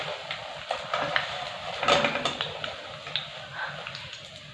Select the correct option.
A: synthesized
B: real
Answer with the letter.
B